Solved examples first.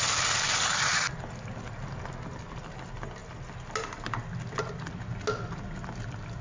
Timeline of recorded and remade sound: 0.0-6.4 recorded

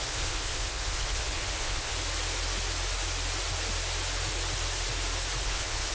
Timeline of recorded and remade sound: 0.0-1.9 remade; 1.9-5.4 recorded; 5.4-5.9 remade